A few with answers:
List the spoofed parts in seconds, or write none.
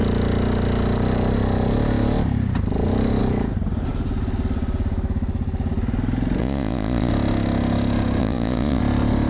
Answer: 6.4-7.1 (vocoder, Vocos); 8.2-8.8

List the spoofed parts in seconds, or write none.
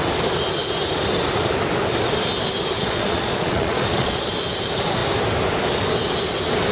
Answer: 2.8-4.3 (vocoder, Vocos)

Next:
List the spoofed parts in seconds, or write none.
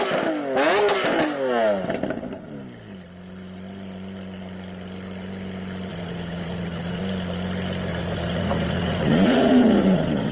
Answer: 5.9-7.0 (vocoder, Vocos); 7.9-10.3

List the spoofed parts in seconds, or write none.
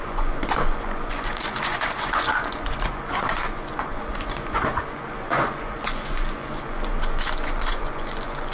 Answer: 0.0-8.5 (vocoder, Vocos)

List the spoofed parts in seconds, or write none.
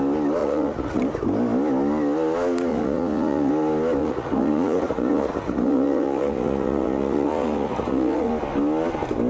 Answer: 0.4-1.0 (vocoder, Vocos); 2.7-3.5; 4.0-8.3